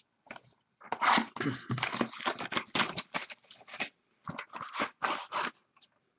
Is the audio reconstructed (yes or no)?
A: no